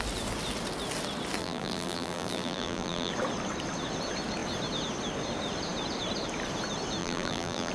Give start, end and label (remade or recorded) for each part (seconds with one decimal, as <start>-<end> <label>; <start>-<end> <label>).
0.0-1.4 recorded; 1.4-3.1 remade; 3.1-7.0 recorded; 7.0-7.7 remade